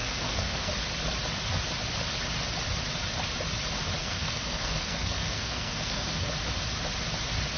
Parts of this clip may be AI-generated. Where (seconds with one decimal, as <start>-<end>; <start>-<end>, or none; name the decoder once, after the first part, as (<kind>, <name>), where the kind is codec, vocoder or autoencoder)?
0.0-0.7 (codec, SNAC); 4.0-6.3